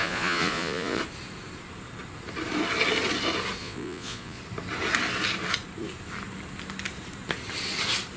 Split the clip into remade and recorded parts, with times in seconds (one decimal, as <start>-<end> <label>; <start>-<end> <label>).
0.0-1.0 remade; 1.0-3.6 recorded; 3.6-4.4 remade; 4.4-8.2 recorded